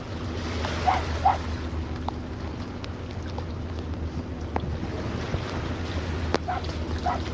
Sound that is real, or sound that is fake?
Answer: real